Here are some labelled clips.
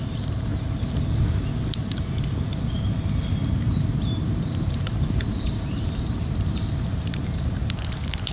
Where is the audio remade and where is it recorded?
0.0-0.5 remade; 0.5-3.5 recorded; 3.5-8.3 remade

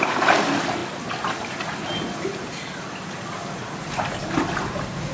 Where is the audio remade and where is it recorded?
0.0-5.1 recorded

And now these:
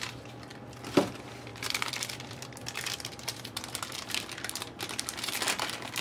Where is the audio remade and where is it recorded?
0.0-1.5 recorded; 1.5-4.8 remade; 4.8-6.0 recorded

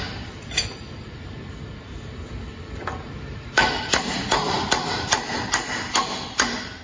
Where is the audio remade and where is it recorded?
0.0-3.6 recorded; 3.6-5.3 remade; 5.3-6.8 recorded

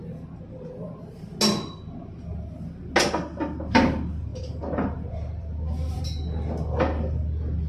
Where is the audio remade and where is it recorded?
0.0-4.3 recorded; 4.3-6.0 remade; 6.0-7.7 recorded